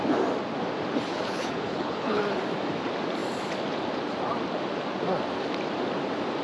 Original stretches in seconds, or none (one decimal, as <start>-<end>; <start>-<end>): 0.0-1.1; 2.2-6.4